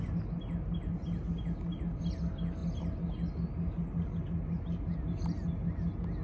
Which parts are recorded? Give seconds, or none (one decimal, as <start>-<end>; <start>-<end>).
0.0-6.2

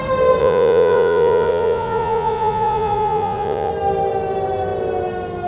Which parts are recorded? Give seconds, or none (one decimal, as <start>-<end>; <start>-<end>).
0.0-0.4; 3.7-5.5

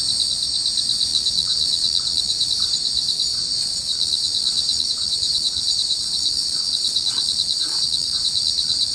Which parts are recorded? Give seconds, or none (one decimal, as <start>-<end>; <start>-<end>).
0.0-1.1; 2.5-3.6

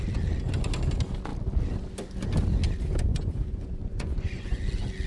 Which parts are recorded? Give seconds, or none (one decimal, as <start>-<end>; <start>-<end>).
0.0-3.1; 4.6-5.1

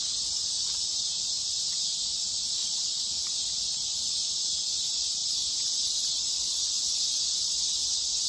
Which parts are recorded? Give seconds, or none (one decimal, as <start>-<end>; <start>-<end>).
0.0-2.6; 3.2-8.3

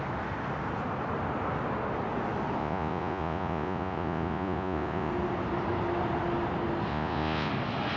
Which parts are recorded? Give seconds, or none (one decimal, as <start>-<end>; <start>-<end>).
0.0-2.6; 5.1-6.9; 7.5-8.0

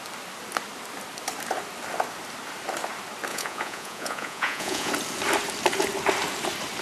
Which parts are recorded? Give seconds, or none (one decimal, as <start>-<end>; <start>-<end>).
0.0-3.3; 4.9-6.8